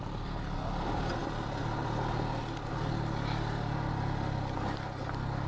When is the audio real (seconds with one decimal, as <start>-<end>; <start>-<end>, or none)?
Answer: 0.0-5.5